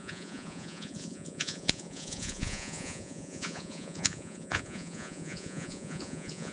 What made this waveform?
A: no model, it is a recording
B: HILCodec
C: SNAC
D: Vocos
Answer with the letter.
D